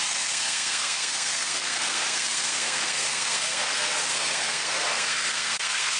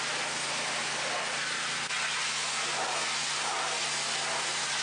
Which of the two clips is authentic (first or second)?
second